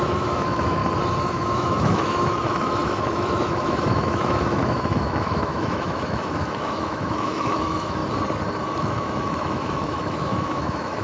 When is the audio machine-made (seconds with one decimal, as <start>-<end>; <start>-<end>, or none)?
0.0-0.8; 1.3-8.0; 8.8-11.0